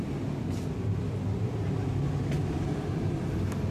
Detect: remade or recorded remade